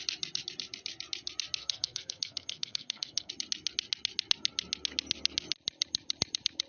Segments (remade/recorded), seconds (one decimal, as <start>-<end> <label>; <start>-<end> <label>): 0.0-1.6 recorded; 1.6-3.3 remade; 3.3-6.7 recorded